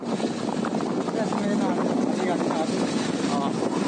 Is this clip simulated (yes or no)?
no